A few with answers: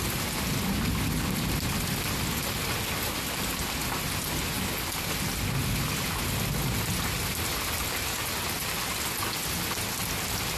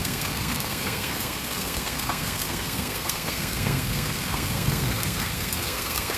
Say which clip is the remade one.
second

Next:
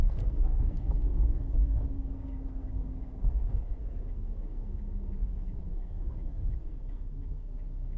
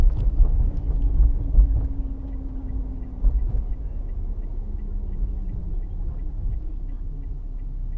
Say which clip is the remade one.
first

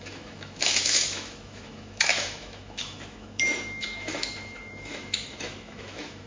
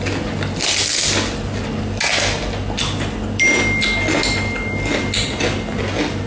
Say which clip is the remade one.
first